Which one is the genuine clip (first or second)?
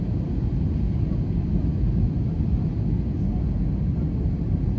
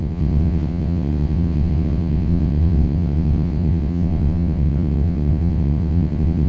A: first